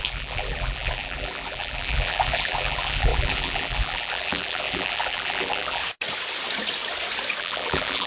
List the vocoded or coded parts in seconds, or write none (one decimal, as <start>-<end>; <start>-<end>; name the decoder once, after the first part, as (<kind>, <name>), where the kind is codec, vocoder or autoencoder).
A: 0.0-5.8 (vocoder, BigVGAN v2); 7.4-8.1